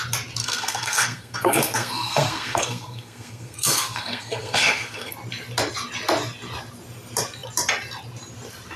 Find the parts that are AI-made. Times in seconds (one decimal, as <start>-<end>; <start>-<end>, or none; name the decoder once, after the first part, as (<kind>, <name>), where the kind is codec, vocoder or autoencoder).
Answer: 0.4-5.1 (codec, SNAC)